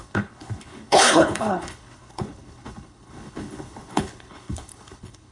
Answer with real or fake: fake